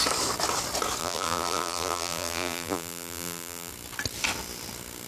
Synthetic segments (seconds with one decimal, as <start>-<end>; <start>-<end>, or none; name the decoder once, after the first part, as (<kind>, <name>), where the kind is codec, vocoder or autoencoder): 1.0-3.7 (vocoder, BigVGAN v2)